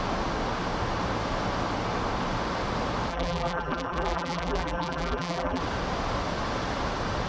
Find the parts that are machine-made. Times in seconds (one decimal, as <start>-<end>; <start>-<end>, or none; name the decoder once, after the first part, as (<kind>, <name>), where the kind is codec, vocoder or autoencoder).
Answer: 3.1-5.6 (vocoder, BigVGAN v2)